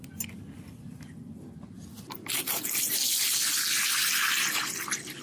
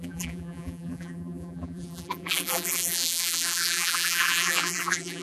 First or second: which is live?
first